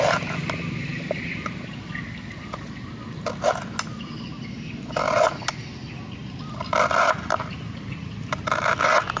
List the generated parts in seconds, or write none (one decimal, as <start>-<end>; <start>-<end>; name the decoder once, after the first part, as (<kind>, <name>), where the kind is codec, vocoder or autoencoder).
none